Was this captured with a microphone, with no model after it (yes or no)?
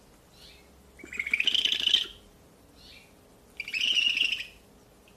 yes